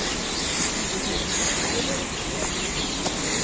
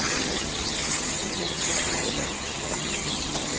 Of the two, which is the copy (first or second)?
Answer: second